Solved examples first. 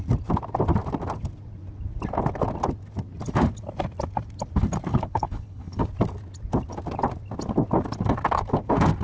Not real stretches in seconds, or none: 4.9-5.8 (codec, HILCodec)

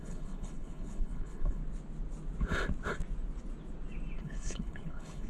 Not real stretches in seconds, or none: 0.0-1.6 (codec, HILCodec); 4.2-5.3

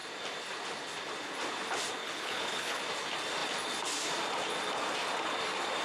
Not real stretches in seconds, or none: 2.0-2.8 (codec, HILCodec)